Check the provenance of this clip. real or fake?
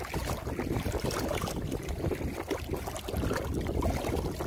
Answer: real